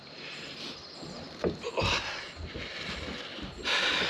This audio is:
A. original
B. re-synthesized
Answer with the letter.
A